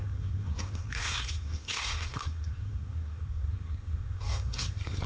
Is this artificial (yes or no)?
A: yes